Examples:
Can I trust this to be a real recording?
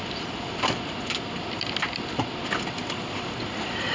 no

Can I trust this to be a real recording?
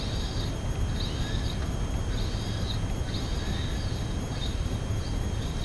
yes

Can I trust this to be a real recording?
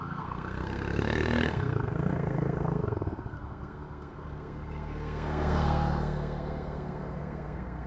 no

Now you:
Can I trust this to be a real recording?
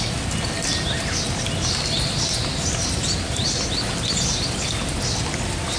yes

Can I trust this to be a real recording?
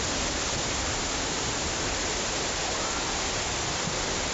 yes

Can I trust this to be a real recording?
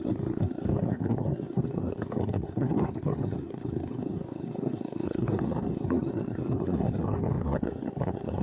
no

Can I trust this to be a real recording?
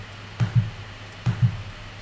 yes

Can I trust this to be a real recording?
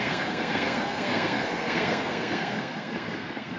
no